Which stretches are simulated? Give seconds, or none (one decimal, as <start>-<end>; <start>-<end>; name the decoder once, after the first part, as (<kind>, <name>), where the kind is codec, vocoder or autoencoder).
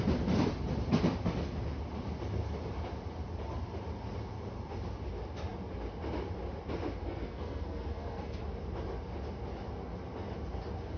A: 7.0-8.4 (codec, SNAC)